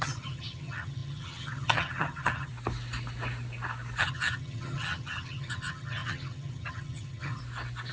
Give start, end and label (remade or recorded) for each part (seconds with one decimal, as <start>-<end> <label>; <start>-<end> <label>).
0.0-2.5 remade; 2.5-4.0 recorded; 4.0-7.4 remade; 7.4-7.9 recorded